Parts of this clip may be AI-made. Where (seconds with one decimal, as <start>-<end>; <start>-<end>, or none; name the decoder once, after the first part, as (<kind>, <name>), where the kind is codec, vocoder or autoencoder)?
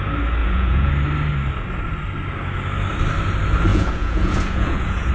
0.4-0.9 (vocoder, Vocos); 3.7-5.1